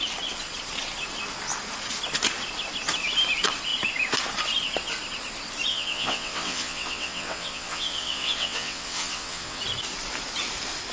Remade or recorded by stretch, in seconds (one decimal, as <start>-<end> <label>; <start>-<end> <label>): 0.0-5.7 recorded; 5.7-9.6 remade; 9.6-10.9 recorded